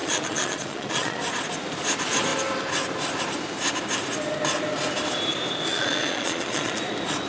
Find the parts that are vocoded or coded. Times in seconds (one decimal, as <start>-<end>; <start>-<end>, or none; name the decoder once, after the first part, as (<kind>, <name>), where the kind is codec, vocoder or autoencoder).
0.0-1.2 (vocoder, Vocos); 5.7-6.8